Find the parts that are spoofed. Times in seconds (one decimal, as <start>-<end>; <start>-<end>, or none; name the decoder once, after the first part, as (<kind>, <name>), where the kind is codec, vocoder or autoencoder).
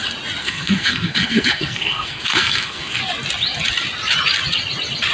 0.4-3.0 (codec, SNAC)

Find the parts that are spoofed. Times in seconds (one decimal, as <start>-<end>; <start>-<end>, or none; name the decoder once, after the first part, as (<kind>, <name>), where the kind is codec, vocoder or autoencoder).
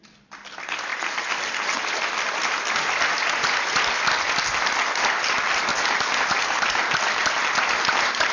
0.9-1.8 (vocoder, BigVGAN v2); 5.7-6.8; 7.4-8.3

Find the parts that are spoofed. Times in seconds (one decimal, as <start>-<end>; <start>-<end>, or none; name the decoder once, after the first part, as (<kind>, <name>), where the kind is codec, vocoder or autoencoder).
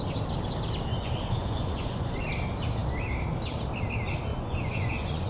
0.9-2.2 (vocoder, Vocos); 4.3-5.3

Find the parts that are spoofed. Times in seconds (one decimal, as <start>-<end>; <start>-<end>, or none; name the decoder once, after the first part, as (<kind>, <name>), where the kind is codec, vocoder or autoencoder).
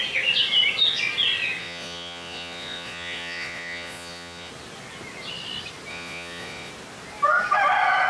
1.6-4.5 (vocoder, Vocos); 5.9-6.7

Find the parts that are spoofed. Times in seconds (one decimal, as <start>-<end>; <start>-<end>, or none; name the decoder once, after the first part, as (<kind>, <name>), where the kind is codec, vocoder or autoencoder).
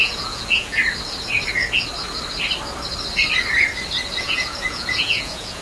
0.0-0.8 (vocoder, Vocos); 4.2-5.6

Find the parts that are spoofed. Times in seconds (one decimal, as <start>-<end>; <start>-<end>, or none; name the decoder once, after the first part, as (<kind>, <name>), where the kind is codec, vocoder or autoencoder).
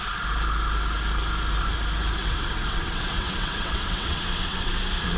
2.2-4.7 (vocoder, WaveNeXt)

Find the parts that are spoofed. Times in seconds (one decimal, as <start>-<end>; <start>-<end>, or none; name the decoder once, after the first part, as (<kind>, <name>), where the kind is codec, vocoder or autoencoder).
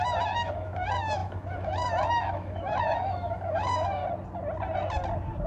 0.0-4.0 (autoencoder, DAC-VAE)